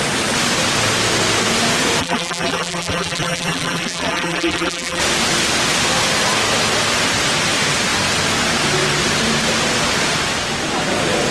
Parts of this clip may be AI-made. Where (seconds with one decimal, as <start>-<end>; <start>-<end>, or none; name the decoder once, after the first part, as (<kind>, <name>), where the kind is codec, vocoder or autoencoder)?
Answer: 2.0-5.0 (vocoder, BigVGAN v2)